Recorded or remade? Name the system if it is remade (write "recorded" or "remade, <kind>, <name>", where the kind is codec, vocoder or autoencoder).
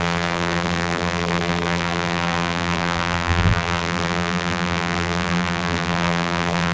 remade, vocoder, BigVGAN v2